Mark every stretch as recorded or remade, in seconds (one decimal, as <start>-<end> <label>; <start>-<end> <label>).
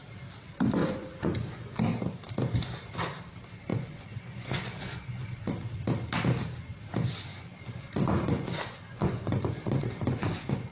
0.0-0.8 recorded; 0.8-1.8 remade; 1.8-3.7 recorded; 3.7-5.5 remade; 5.5-7.3 recorded; 7.3-10.7 remade